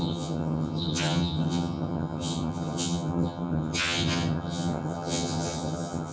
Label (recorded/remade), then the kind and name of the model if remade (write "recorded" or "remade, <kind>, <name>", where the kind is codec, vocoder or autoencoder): remade, vocoder, HiFi-GAN